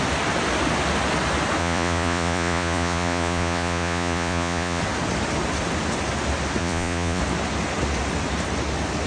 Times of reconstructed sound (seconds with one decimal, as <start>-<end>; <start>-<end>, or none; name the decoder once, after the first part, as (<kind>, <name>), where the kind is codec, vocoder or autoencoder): 1.6-4.8 (vocoder, Vocos); 6.6-7.2